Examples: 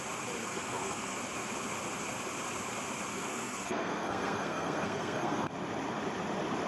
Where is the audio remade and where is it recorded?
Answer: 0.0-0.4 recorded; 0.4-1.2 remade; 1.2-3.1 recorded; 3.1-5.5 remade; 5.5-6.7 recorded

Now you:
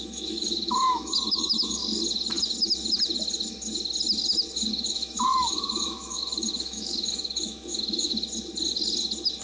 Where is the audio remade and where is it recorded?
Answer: 0.0-1.8 remade; 1.8-4.7 recorded; 4.7-8.1 remade; 8.1-9.4 recorded

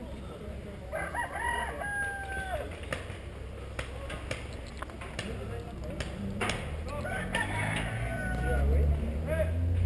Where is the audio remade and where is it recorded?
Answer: 0.0-9.9 recorded

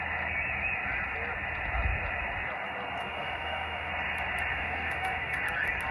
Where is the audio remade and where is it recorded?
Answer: 0.0-3.0 recorded; 3.0-3.9 remade; 3.9-4.5 recorded; 4.5-5.4 remade; 5.4-5.9 recorded

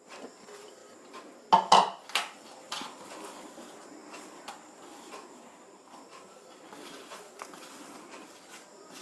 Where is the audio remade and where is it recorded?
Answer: 0.0-9.0 recorded